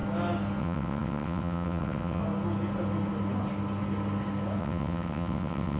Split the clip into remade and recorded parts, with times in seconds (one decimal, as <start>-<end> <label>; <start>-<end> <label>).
0.0-0.6 recorded; 0.6-2.2 remade; 2.2-4.6 recorded; 4.6-5.8 remade